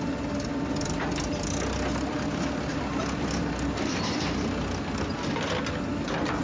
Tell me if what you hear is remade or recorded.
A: recorded